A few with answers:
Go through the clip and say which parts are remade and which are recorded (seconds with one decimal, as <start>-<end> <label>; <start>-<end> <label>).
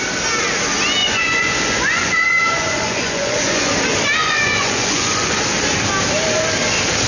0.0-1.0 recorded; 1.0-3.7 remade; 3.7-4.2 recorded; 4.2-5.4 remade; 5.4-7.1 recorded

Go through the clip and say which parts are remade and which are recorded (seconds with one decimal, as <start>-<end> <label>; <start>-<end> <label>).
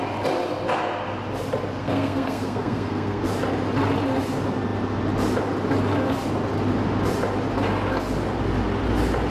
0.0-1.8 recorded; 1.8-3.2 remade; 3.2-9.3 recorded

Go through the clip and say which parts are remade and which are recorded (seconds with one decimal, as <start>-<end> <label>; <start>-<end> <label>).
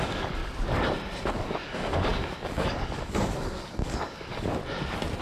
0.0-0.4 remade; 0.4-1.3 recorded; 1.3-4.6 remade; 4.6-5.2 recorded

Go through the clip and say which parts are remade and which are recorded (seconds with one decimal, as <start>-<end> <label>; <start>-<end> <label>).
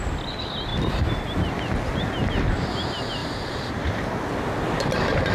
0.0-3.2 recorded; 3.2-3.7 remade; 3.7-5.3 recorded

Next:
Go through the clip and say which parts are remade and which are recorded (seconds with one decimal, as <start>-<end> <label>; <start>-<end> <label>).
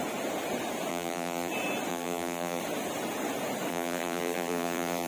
0.0-0.9 recorded; 0.9-1.5 remade; 1.5-1.9 recorded; 1.9-2.6 remade; 2.6-3.7 recorded; 3.7-5.1 remade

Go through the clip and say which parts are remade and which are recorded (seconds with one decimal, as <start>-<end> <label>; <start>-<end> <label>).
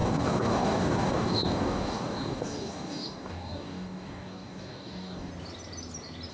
0.0-5.3 remade; 5.3-6.3 recorded